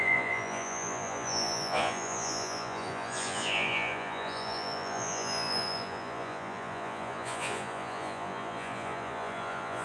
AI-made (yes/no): yes